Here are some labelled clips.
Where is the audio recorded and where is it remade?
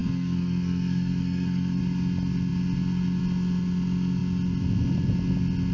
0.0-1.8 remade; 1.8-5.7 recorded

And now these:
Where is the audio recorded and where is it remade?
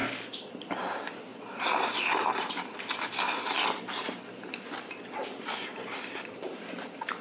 0.0-7.2 recorded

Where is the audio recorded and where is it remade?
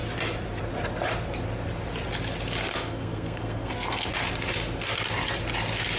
0.0-2.7 recorded; 2.7-4.1 remade; 4.1-6.0 recorded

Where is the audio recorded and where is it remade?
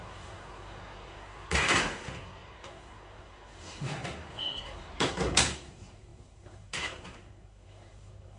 0.0-8.4 remade